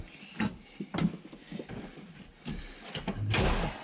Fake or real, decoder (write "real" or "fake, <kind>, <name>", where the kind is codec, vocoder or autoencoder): real